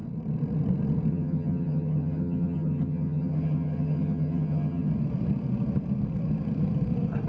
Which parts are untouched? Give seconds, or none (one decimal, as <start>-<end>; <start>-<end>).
0.0-1.1; 4.9-7.3